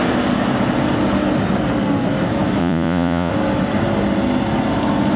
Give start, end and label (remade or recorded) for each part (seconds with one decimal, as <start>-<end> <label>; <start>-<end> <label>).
0.0-2.6 recorded; 2.6-3.3 remade; 3.3-5.2 recorded